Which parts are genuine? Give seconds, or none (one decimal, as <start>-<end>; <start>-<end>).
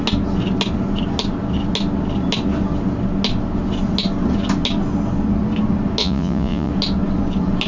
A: 0.0-6.0; 6.7-7.7